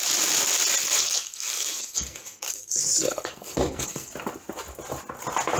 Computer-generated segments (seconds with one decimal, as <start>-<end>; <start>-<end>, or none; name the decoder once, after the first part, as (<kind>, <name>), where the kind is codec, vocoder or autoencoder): 0.8-4.1 (codec, SNAC)